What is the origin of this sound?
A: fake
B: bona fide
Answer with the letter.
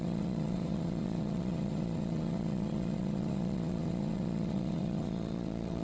A